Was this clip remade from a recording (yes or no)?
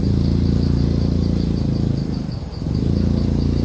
no